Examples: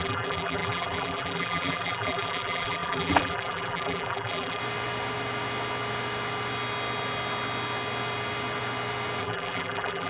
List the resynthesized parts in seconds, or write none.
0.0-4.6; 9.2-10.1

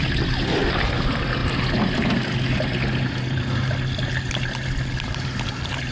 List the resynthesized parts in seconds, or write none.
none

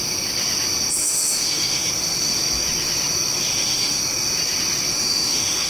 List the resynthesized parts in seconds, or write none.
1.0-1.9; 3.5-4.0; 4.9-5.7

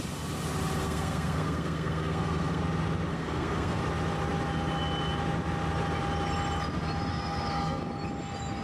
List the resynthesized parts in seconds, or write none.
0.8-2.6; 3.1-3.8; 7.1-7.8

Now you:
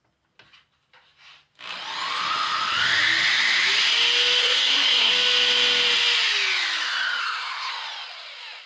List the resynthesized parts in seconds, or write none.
4.4-5.1; 7.2-7.7

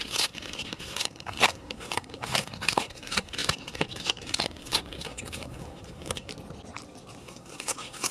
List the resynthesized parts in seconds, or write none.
0.0-6.3; 7.2-8.1

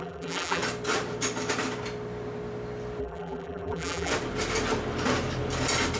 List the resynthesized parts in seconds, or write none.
0.0-0.6; 3.0-4.1

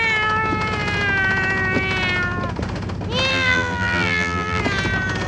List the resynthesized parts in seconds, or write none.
3.3-4.6